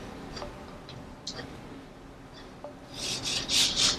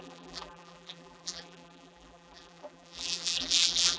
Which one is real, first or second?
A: first